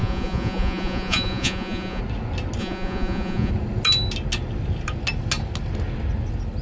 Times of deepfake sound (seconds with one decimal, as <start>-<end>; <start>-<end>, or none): 0.0-2.0; 2.6-3.5

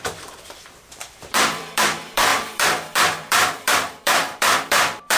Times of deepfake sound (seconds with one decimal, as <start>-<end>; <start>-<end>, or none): 0.0-5.2

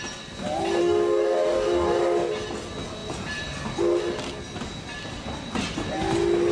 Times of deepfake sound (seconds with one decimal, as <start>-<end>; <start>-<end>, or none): 0.8-2.0

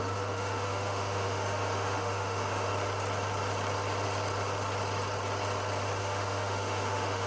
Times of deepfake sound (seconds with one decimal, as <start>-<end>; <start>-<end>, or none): 0.0-2.7; 6.0-7.3

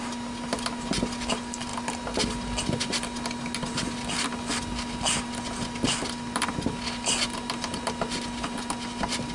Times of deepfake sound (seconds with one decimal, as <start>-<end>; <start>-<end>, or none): none

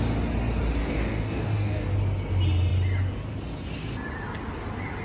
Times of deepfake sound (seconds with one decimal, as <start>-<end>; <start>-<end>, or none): 0.8-1.9